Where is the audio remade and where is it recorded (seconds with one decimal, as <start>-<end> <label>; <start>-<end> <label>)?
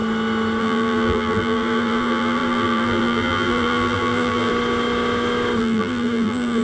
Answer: 0.0-0.6 recorded; 0.6-4.5 remade; 4.5-5.6 recorded; 5.6-6.6 remade